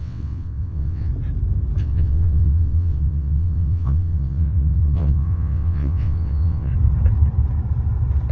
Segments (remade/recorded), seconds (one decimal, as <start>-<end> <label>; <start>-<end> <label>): 0.0-1.1 remade; 1.1-1.8 recorded; 1.8-6.7 remade; 6.7-8.3 recorded